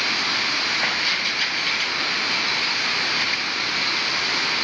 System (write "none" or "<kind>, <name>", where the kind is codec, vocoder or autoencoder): none